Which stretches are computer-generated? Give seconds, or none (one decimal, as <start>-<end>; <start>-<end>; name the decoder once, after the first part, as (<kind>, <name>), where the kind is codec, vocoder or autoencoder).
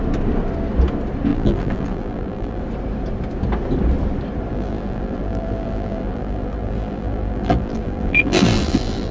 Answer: 1.3-2.6 (vocoder, BigVGAN v2); 4.5-9.1